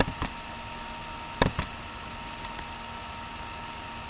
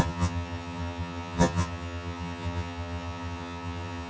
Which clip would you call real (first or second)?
first